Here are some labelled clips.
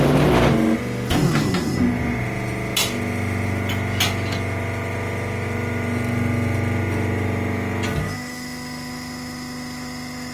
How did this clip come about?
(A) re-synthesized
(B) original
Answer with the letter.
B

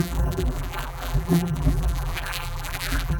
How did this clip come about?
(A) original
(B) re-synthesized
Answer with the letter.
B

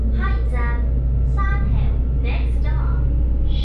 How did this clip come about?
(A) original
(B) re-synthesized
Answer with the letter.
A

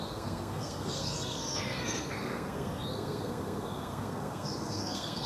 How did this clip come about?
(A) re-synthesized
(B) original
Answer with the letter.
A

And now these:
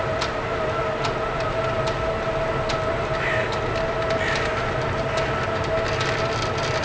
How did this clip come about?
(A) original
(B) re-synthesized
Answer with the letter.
A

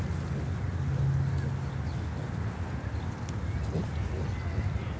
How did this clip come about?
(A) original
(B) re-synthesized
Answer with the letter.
A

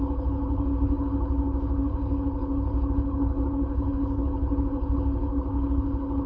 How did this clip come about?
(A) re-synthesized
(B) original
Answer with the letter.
A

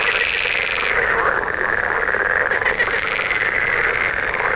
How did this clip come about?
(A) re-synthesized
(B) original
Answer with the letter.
B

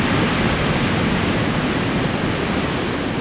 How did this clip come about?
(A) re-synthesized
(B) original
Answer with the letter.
B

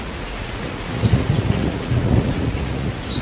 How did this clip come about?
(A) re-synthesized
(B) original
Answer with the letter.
A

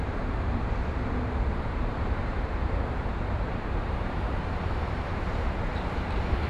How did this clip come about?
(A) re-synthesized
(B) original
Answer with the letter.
A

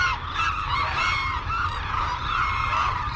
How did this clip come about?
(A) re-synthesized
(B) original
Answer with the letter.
A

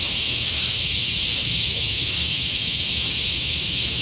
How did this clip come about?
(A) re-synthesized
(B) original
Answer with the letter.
A